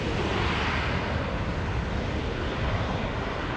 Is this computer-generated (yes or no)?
no